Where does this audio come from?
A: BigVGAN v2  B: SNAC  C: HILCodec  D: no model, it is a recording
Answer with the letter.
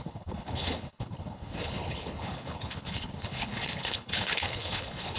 C